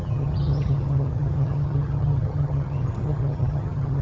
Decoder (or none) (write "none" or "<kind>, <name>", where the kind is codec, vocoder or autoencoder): vocoder, HiFi-GAN